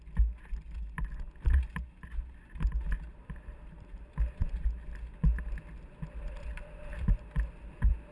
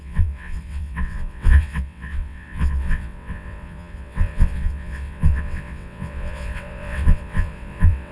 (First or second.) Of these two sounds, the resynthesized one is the second